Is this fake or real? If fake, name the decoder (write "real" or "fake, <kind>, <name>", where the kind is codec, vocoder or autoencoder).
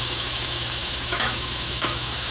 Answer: fake, autoencoder, DAC-VAE